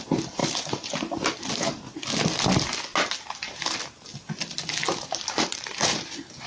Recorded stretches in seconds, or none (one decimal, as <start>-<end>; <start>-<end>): 1.8-3.2; 4.1-5.0